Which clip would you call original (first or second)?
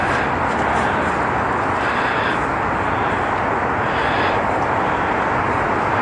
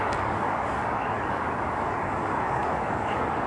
first